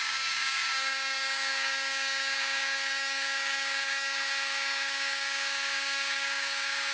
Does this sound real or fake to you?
fake